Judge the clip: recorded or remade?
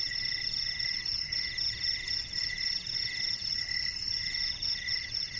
recorded